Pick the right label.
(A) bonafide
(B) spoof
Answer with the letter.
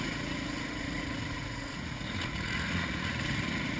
B